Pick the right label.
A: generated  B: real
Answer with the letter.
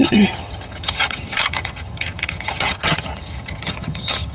A